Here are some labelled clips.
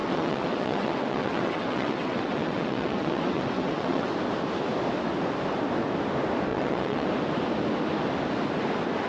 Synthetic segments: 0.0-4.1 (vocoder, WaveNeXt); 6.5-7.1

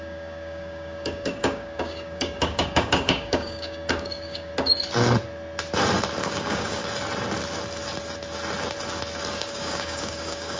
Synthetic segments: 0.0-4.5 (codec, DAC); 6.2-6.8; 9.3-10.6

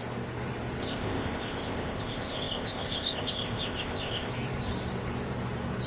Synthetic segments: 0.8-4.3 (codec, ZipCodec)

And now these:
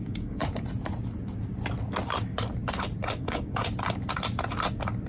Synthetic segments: 0.0-0.4 (codec, DAC); 3.2-3.6

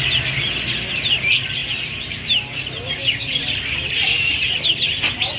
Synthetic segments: none